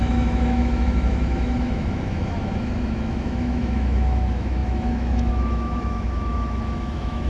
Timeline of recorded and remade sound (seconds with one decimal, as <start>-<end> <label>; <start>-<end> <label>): 0.0-7.3 remade